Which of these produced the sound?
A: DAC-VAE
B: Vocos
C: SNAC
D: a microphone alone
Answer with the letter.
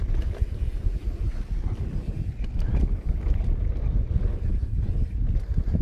D